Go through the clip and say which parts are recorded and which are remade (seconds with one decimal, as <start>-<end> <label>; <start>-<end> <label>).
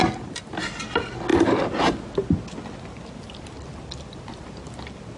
0.0-0.5 remade; 0.5-5.2 recorded